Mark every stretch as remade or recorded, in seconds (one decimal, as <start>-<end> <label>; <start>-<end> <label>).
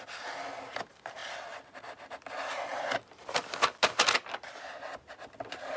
0.0-5.8 recorded